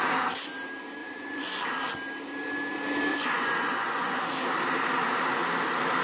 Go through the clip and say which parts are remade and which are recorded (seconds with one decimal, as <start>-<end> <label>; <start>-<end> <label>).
0.0-1.0 recorded; 1.0-1.6 remade; 1.6-3.1 recorded; 3.1-4.2 remade; 4.2-6.0 recorded